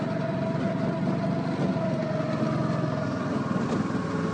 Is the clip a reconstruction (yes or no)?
no